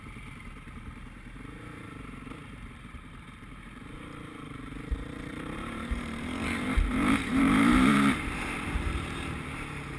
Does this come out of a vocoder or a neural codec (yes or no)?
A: yes